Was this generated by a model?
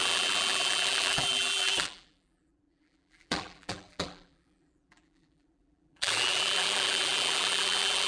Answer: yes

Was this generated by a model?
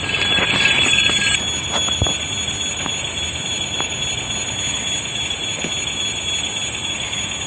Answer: no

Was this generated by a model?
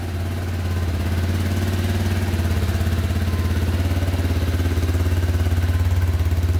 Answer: no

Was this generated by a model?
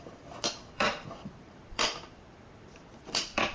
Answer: yes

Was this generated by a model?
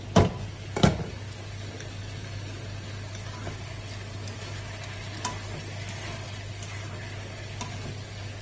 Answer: no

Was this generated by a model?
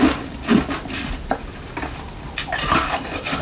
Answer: no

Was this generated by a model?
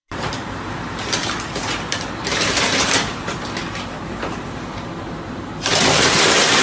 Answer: yes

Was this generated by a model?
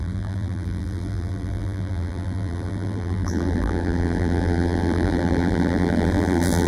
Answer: yes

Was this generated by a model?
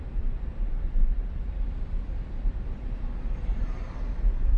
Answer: yes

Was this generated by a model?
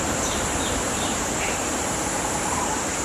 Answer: yes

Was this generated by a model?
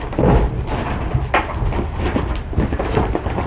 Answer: no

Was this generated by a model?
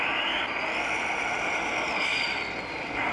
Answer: no